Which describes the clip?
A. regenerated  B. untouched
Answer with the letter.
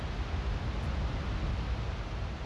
B